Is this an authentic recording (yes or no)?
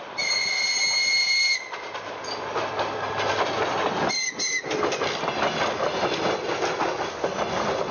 yes